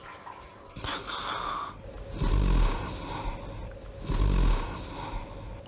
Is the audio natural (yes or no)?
yes